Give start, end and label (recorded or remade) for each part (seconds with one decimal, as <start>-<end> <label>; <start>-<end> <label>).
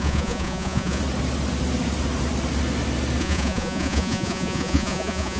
0.0-1.0 remade; 1.0-3.2 recorded; 3.2-5.4 remade